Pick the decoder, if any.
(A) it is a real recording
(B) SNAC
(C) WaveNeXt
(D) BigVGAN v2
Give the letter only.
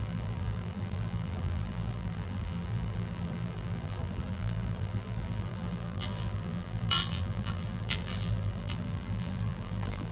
D